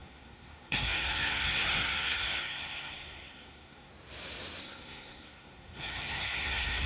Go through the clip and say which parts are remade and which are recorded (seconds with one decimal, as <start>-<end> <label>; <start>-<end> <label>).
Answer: 0.0-3.9 remade; 3.9-4.6 recorded; 4.6-6.9 remade